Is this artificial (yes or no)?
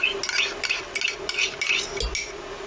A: no